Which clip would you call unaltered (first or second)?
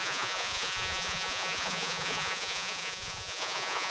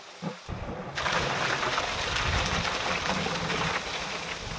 second